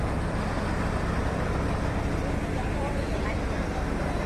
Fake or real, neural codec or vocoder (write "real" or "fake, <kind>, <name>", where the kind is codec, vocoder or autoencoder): fake, vocoder, BigVGAN v2